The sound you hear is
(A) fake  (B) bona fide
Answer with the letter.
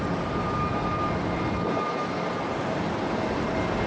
B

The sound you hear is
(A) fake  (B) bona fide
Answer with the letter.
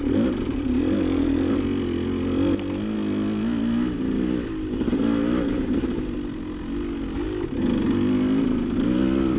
B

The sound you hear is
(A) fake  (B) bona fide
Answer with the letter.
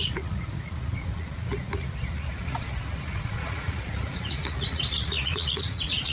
A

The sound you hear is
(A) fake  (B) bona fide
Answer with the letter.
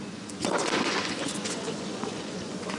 A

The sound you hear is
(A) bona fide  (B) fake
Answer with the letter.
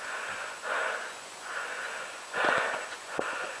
B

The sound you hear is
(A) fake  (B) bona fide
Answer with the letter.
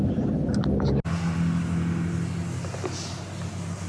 B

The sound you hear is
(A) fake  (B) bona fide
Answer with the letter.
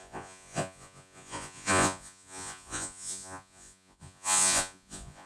A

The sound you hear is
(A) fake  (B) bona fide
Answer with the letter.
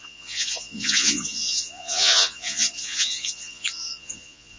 A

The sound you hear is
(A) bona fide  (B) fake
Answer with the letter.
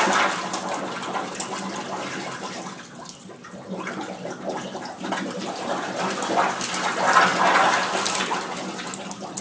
A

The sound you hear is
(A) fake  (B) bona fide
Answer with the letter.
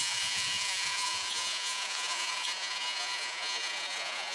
A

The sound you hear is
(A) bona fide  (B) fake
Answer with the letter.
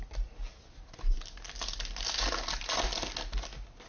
A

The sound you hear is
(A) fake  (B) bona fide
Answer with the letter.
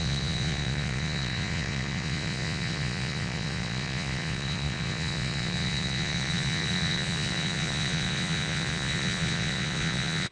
A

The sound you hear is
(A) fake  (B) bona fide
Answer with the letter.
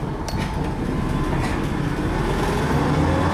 B